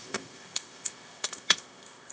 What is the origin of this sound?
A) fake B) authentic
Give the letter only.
A